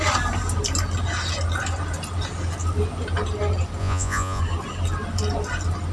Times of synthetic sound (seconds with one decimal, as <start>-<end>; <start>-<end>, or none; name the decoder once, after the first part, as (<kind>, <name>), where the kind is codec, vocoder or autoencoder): 3.8-4.4 (vocoder, Vocos)